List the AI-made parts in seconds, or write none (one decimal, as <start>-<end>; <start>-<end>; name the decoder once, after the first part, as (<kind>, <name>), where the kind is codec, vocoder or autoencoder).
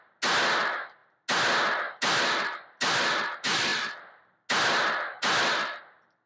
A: none